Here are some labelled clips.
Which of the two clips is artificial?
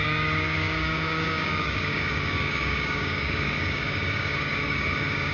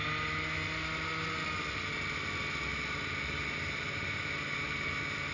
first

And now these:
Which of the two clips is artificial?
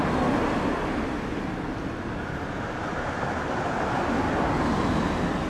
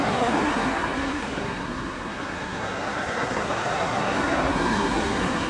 second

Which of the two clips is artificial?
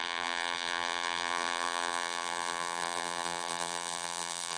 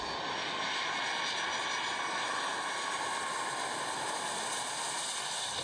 first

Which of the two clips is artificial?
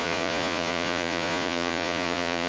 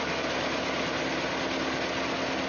first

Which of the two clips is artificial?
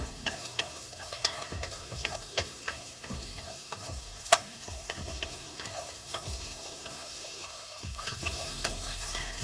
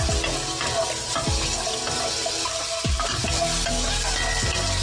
first